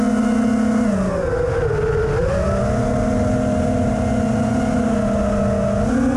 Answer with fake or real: real